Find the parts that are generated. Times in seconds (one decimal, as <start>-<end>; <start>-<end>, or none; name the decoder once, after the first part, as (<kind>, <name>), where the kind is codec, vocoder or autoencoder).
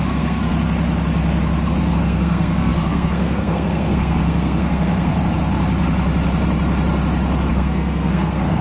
0.0-0.5 (codec, SNAC); 1.9-5.1; 7.5-8.6